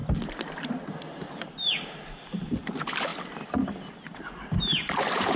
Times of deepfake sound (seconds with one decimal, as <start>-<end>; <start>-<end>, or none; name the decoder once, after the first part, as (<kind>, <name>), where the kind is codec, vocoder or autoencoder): none